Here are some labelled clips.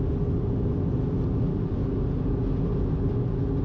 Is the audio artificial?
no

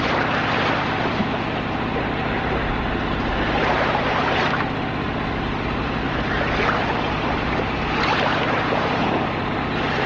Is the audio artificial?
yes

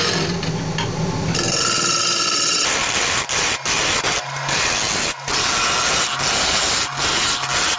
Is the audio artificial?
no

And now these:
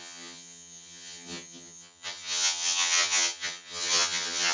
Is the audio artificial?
yes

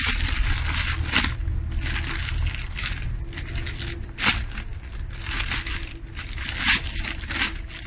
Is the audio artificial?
no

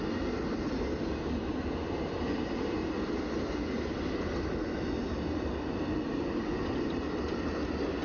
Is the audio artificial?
no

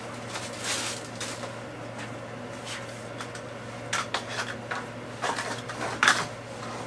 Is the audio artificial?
no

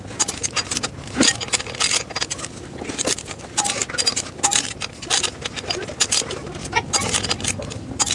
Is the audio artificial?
no